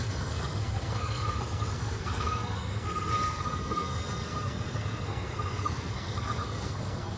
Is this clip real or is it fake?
fake